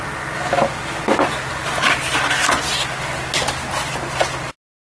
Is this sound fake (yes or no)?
no